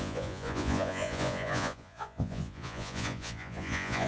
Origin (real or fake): fake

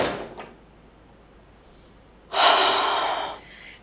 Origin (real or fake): real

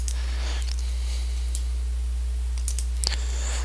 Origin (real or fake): real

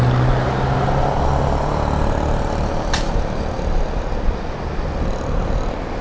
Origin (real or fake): real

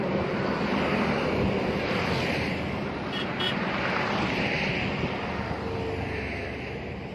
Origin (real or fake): real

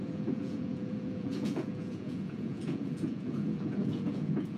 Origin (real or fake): fake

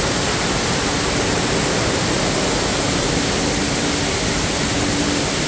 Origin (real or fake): real